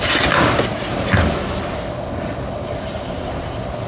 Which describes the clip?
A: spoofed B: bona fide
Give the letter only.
B